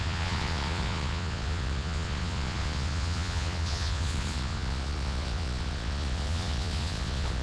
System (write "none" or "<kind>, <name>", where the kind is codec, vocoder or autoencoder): vocoder, Vocos